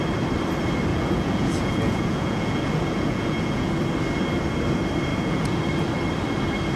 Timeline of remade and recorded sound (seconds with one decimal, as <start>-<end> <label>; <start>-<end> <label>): 0.0-0.9 recorded; 0.9-3.8 remade; 3.8-5.1 recorded; 5.1-5.6 remade; 5.6-6.8 recorded